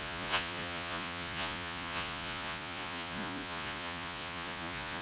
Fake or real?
fake